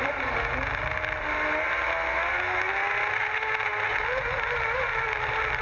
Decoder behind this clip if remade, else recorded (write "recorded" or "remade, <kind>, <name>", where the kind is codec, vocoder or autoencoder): recorded